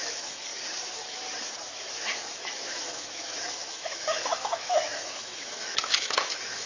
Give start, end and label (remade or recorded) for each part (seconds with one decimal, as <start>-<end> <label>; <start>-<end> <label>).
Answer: 0.0-0.5 remade; 0.5-1.7 recorded; 1.7-6.7 remade